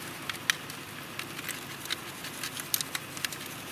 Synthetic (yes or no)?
no